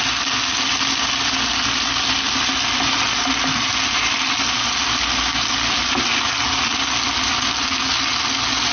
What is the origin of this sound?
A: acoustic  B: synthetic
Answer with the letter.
A